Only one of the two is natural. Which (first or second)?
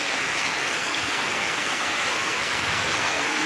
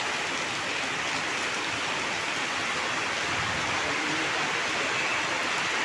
second